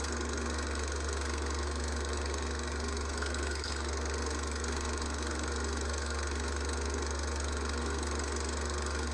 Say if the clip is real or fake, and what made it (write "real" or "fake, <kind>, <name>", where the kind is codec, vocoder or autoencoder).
fake, codec, SNAC